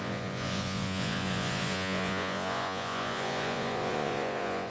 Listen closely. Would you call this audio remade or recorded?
remade